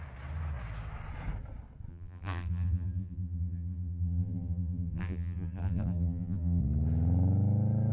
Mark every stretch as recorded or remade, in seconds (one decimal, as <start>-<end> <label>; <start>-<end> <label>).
0.0-1.9 recorded; 1.9-6.6 remade; 6.6-7.9 recorded